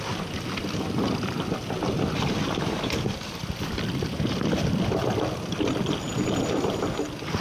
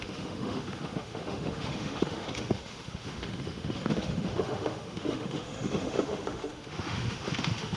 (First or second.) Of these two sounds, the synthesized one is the second